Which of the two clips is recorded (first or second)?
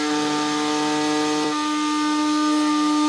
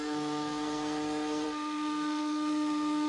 first